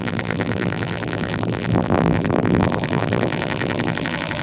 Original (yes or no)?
no